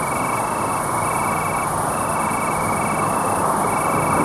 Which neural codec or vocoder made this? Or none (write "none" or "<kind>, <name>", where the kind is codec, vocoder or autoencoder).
none